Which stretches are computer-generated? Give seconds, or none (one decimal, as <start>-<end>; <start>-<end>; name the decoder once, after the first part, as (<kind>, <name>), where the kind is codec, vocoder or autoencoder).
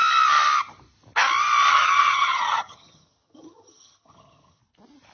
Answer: 1.7-4.6 (vocoder, HiFi-GAN)